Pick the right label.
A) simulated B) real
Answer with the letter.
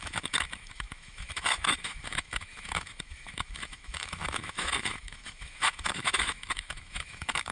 A